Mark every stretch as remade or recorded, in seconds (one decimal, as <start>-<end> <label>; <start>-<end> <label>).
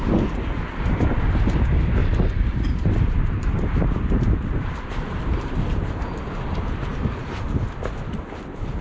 0.0-2.0 recorded; 2.0-6.0 remade; 6.0-8.8 recorded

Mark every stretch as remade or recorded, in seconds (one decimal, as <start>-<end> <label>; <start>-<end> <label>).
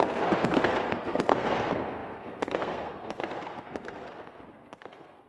0.0-5.3 remade